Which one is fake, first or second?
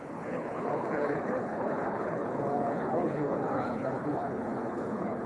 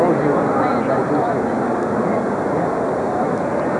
first